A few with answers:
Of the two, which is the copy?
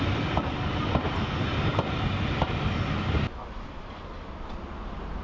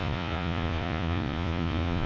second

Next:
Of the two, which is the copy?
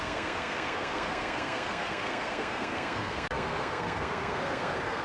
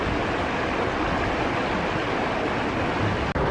first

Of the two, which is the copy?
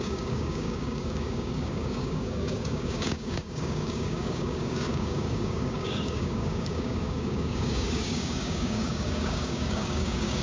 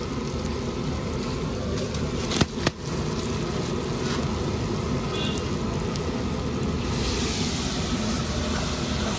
first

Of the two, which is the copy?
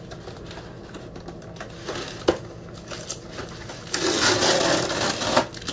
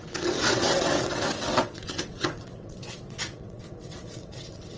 second